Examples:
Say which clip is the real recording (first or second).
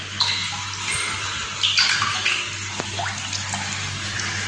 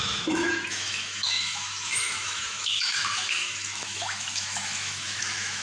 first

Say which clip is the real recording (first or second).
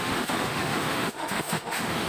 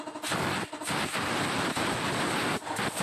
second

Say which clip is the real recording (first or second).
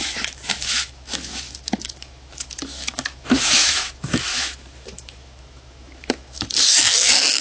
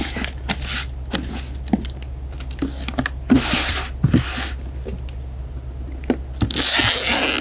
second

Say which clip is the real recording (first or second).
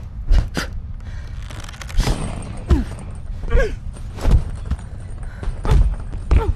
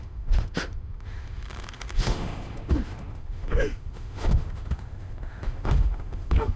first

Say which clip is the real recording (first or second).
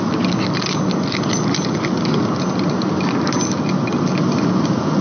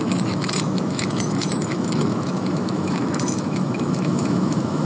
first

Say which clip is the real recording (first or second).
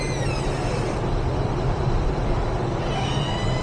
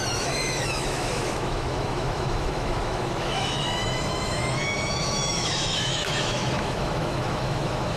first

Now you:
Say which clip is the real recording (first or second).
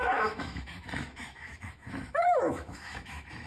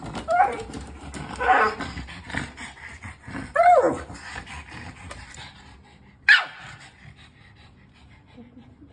second